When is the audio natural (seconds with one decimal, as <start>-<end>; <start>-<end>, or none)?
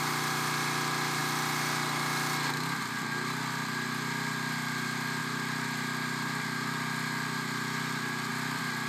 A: 0.0-8.9